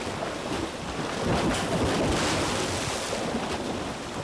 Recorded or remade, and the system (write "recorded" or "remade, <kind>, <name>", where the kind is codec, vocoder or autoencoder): recorded